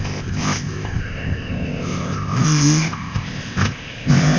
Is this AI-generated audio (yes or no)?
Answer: yes